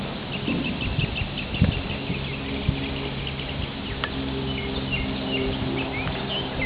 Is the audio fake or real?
real